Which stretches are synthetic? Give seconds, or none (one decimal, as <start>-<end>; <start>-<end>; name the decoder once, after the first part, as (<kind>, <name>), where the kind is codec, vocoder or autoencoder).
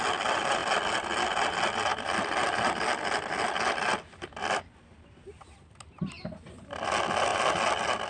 none